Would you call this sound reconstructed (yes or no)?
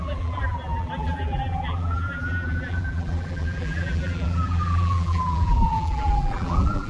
yes